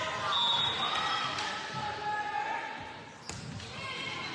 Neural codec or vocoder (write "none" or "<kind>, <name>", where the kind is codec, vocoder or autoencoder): none